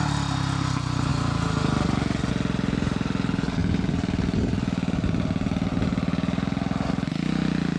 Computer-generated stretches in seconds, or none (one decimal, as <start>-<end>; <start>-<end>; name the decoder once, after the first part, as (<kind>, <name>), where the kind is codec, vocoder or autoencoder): none